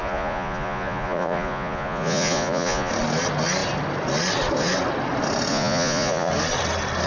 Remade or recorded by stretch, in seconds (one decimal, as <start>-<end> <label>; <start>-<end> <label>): 0.0-2.9 remade; 2.9-5.5 recorded; 5.5-6.3 remade; 6.3-7.1 recorded